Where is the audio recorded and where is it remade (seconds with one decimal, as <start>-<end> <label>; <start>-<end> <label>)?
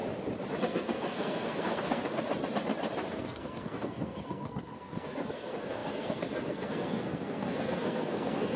0.0-0.6 recorded; 0.6-2.0 remade; 2.0-3.1 recorded; 3.1-8.6 remade